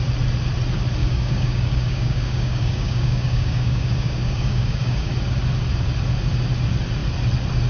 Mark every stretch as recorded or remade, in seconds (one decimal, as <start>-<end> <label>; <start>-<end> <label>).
0.0-1.0 recorded; 1.0-5.1 remade; 5.1-7.7 recorded